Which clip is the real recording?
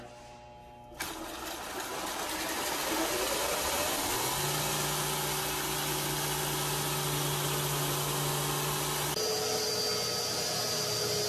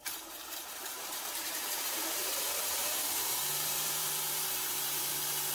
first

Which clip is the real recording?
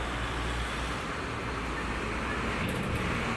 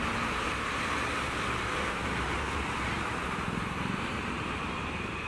first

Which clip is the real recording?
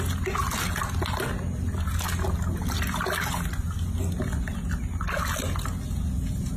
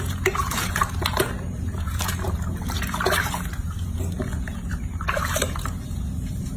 first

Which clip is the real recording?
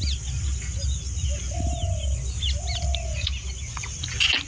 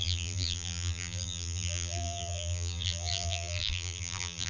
first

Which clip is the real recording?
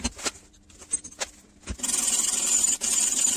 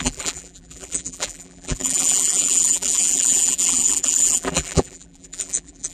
first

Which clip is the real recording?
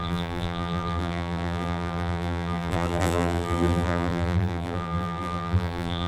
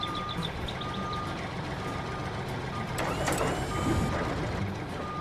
second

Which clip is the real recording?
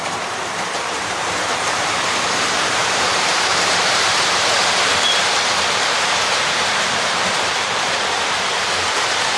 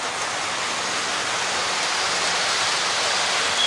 second